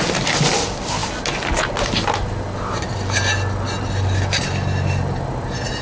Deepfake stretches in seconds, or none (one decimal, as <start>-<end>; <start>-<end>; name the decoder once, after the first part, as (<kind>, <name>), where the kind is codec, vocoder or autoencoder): none